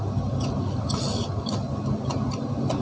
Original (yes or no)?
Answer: yes